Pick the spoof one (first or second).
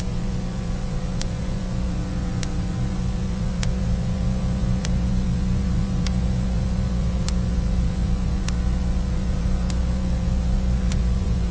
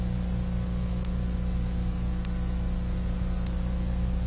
first